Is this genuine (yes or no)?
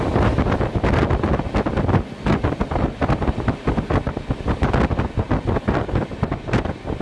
yes